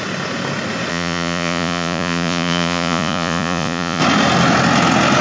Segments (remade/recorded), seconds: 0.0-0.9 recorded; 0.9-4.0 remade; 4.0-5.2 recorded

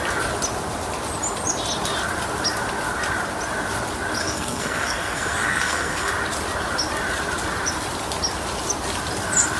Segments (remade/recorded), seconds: 0.0-4.2 recorded; 4.2-6.1 remade; 6.1-9.6 recorded

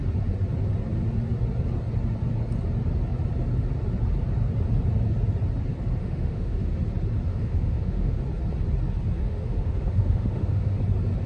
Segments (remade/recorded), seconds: 0.0-6.0 recorded; 6.0-6.8 remade; 6.8-7.3 recorded; 7.3-8.2 remade; 8.2-9.2 recorded; 9.2-10.8 remade; 10.8-11.3 recorded